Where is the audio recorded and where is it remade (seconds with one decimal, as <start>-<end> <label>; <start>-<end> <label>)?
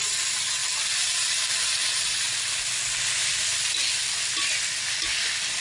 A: 0.0-3.2 recorded; 3.2-4.0 remade; 4.0-5.6 recorded